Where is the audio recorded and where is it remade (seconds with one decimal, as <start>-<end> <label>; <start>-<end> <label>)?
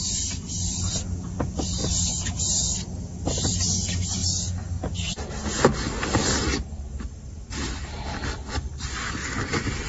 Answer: 0.0-1.8 remade; 1.8-2.4 recorded; 2.4-4.2 remade; 4.2-7.8 recorded; 7.8-9.9 remade